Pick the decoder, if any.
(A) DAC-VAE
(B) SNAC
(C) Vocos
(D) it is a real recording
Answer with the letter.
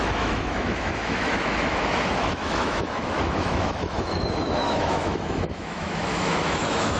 A